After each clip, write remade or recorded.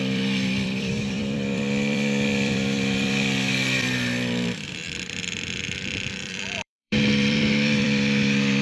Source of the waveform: remade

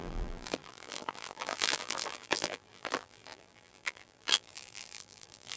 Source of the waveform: remade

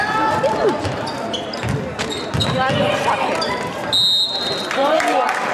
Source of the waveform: recorded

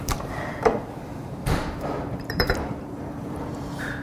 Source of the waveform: remade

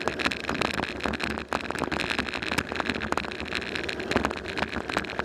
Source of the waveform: recorded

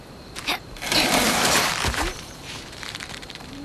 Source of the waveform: remade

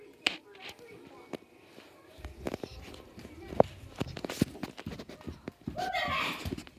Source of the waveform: recorded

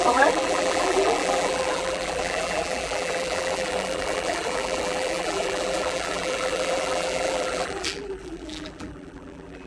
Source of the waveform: remade